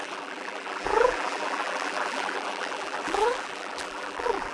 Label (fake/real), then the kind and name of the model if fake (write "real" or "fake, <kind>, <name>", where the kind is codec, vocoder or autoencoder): fake, vocoder, BigVGAN v2